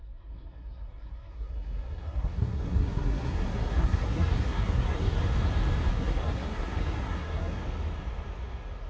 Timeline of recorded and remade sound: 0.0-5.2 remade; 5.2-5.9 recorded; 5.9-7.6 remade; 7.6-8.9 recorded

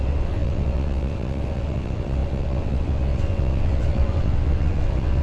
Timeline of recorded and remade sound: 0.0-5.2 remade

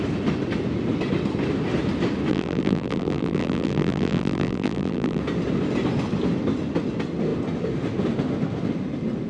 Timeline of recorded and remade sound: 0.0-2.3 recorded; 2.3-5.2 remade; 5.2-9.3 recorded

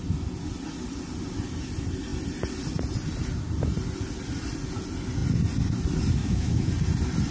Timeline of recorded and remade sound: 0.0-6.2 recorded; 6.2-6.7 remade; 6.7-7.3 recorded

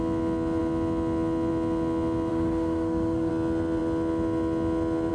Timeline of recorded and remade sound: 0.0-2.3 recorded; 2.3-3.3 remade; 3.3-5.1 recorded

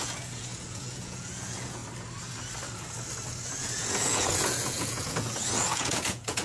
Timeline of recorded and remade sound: 0.0-1.8 remade; 1.8-3.6 recorded; 3.6-6.4 remade

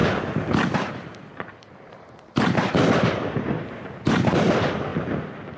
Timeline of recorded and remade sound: 0.0-3.4 remade; 3.4-5.6 recorded